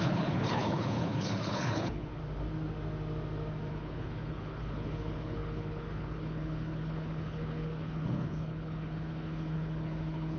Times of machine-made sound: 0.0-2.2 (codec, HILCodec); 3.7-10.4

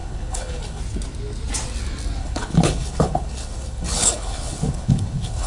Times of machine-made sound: 0.0-0.8 (codec, HILCodec); 2.2-5.5

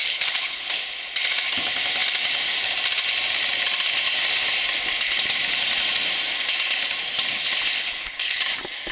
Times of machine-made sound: 0.0-0.7 (codec, HILCodec); 7.8-8.4

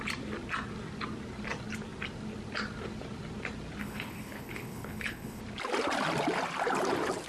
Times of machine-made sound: 3.8-5.4 (codec, HILCodec)

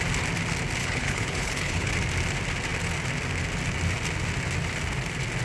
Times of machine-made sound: 0.8-1.9 (codec, HILCodec)

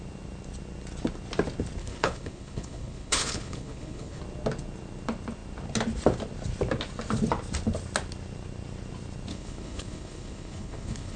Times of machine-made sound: 1.8-4.2 (codec, HILCodec); 9.3-11.2

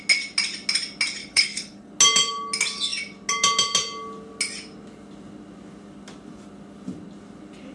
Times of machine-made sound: 1.2-1.9 (codec, HILCodec)

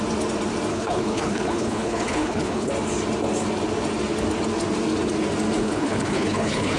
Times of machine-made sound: 0.7-2.7 (codec, HILCodec); 5.6-6.8